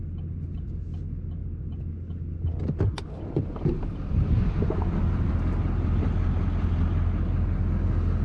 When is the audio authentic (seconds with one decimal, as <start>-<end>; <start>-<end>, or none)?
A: 0.0-8.2